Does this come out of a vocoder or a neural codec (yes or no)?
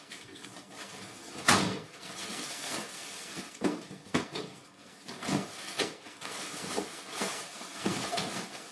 yes